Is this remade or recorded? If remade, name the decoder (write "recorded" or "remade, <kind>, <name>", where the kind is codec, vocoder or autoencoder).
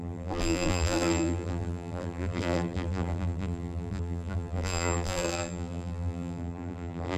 remade, vocoder, BigVGAN v2